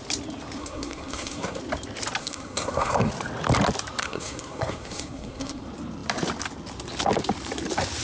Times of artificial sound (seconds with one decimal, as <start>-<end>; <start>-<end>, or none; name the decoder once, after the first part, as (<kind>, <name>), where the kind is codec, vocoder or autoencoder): 0.6-1.6 (codec, SNAC); 2.2-3.1; 4.0-5.6